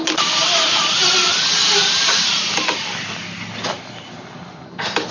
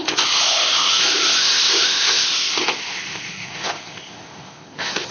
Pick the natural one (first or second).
first